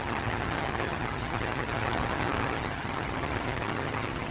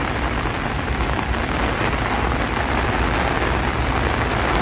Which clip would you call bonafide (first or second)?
second